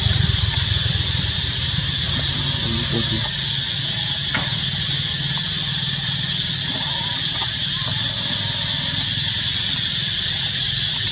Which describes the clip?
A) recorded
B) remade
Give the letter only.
A